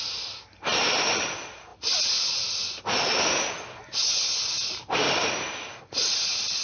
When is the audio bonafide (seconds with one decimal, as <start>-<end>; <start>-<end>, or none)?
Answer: 0.0-6.6

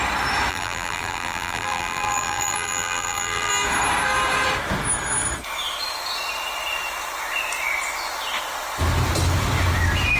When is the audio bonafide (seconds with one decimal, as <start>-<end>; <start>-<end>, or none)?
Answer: 0.0-0.5; 3.5-10.2

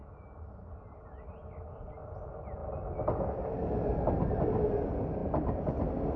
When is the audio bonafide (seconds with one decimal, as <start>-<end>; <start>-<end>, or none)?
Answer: 0.0-6.2